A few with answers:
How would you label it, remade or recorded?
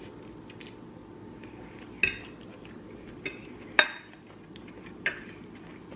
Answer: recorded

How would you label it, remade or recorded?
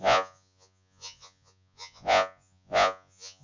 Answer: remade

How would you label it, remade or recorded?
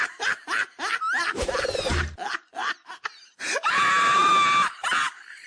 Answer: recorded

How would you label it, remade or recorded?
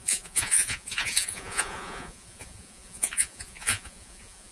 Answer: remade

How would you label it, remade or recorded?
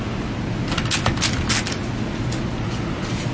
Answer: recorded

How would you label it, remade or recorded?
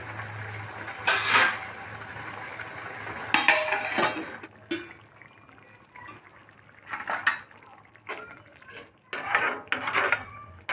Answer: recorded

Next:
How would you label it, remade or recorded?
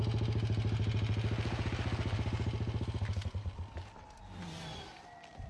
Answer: recorded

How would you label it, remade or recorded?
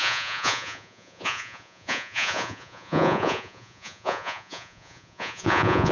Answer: remade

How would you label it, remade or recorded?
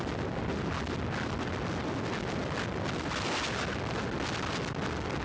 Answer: recorded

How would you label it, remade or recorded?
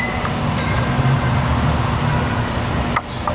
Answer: recorded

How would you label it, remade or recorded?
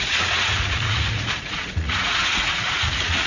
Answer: remade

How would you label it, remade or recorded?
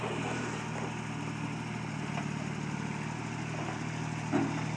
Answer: recorded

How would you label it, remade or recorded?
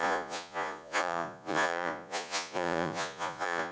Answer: remade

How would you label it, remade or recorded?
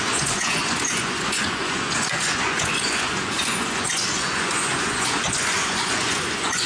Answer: remade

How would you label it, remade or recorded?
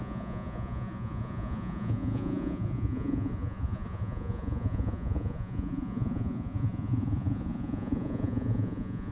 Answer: remade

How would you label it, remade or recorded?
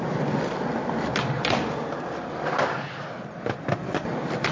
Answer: recorded